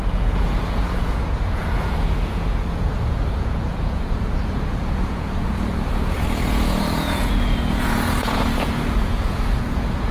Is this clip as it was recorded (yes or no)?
no